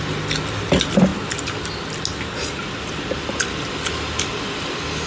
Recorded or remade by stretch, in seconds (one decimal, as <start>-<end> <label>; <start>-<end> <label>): 0.0-5.1 recorded